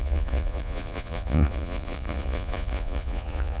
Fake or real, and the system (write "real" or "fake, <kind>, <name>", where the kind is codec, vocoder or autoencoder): fake, vocoder, Vocos